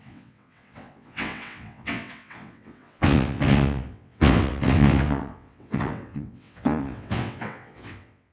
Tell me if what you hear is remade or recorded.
remade